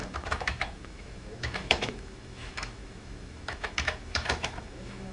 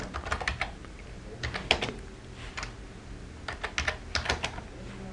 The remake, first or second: first